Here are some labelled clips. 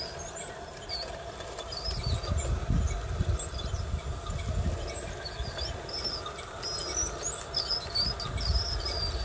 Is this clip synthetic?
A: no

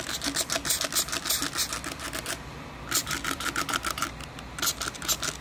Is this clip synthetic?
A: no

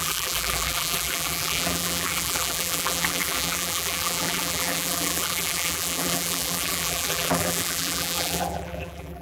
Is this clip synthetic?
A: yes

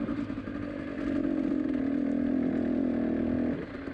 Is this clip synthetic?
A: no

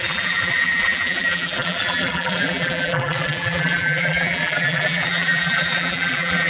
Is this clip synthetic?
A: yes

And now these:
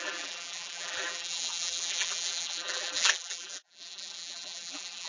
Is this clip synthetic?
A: yes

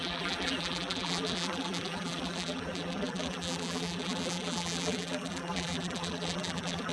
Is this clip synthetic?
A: yes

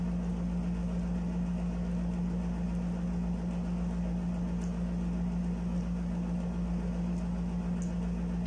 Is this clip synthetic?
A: no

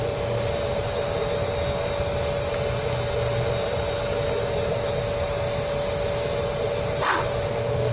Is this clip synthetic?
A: no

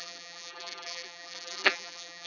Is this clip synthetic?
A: yes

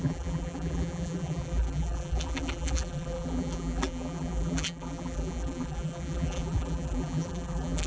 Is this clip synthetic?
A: yes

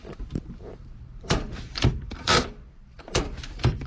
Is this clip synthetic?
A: yes